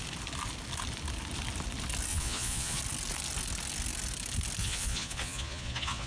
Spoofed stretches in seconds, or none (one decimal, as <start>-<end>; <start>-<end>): 2.1-2.8; 4.6-6.1

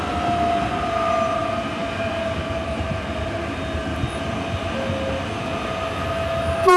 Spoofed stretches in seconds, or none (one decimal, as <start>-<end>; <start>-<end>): none

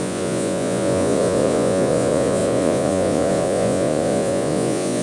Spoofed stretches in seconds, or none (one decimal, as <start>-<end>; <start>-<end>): 0.0-5.0

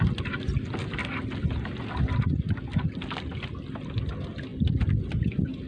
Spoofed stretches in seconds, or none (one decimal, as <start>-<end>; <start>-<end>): none

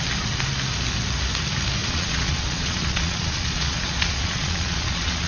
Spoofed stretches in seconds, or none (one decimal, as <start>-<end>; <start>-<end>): 1.8-5.3

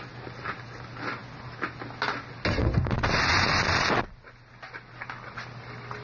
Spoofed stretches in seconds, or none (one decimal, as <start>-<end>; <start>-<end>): none

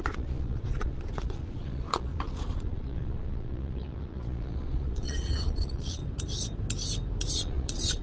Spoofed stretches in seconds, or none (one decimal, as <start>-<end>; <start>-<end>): 0.0-6.0; 7.3-8.0

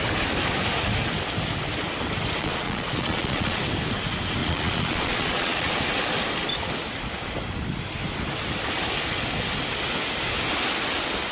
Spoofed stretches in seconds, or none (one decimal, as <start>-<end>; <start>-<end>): 2.4-3.6; 4.4-5.7